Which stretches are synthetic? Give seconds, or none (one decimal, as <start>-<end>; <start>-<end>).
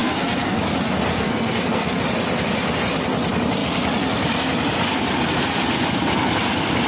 0.0-0.6; 1.1-2.0